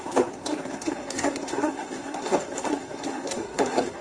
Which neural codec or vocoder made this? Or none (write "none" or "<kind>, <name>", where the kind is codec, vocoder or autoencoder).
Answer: codec, SNAC